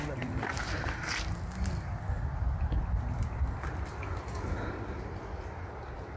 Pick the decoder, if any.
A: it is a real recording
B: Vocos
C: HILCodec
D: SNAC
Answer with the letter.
A